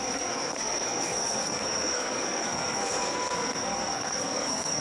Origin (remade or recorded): remade